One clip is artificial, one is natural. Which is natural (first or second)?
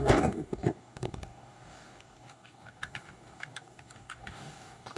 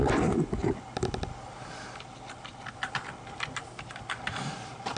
second